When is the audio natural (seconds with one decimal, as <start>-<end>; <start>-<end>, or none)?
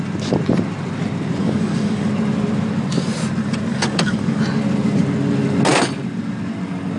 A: 0.0-1.4; 2.1-3.7; 4.4-7.0